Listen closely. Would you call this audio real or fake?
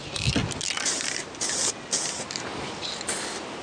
real